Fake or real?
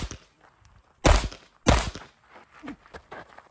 real